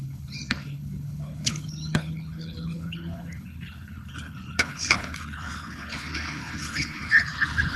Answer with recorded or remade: remade